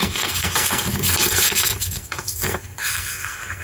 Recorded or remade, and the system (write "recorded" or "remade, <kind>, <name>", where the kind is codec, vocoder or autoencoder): remade, codec, SNAC